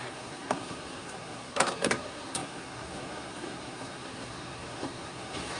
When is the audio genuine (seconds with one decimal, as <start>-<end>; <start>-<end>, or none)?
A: none